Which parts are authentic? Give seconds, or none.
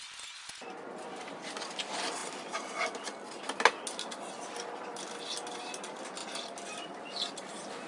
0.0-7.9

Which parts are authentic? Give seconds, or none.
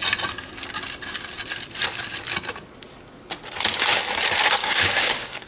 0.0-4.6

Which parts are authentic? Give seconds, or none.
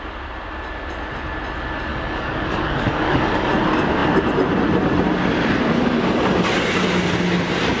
0.0-1.9; 3.5-7.8